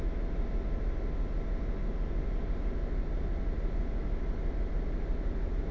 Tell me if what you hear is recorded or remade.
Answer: recorded